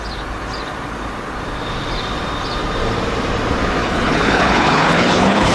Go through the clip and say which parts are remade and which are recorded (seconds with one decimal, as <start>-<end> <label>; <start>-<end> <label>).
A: 0.0-3.8 recorded; 3.8-5.5 remade